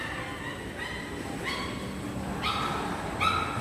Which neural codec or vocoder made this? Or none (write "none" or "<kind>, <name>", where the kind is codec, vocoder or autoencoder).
none